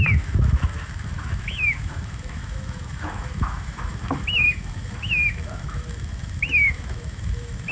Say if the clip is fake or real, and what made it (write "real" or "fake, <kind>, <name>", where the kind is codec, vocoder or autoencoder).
fake, autoencoder, DAC-VAE